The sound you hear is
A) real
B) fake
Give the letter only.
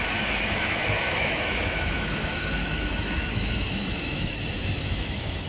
B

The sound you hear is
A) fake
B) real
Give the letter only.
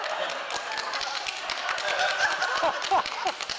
B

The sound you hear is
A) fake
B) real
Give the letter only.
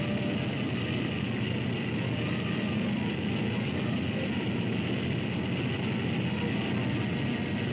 B